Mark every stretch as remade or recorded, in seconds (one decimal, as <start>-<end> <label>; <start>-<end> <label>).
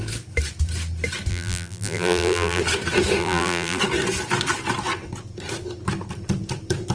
0.0-1.3 recorded; 1.3-2.6 remade; 2.6-3.2 recorded; 3.2-3.8 remade; 3.8-6.9 recorded